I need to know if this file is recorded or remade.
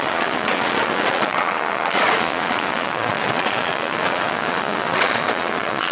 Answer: remade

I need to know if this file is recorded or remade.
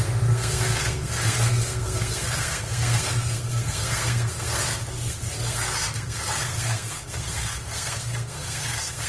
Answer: remade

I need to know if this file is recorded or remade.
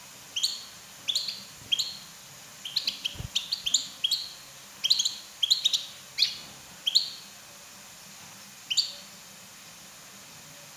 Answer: recorded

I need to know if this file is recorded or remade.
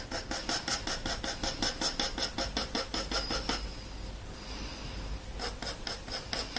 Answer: recorded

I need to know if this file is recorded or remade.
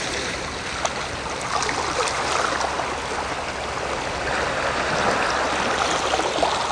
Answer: recorded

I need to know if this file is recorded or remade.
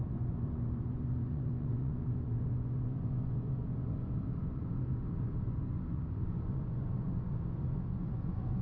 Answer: remade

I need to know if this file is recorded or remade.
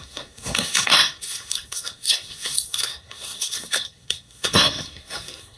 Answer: remade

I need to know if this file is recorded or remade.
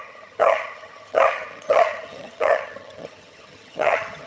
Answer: remade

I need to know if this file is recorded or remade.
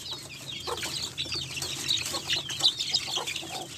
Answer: recorded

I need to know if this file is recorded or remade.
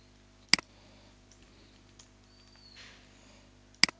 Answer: recorded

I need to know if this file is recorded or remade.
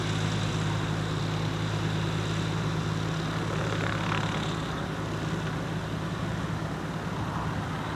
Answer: recorded